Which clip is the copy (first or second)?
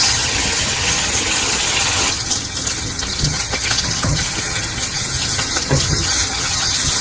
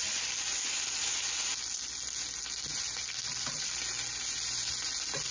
first